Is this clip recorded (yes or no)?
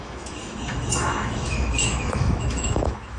no